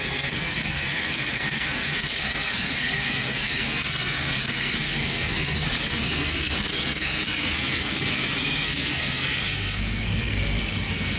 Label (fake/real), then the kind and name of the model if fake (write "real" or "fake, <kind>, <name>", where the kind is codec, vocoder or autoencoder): fake, codec, SNAC